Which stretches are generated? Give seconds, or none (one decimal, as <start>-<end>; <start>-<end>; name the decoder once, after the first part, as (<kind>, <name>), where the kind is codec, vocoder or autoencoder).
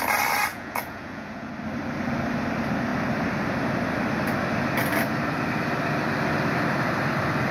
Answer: 0.5-1.5 (vocoder, Vocos)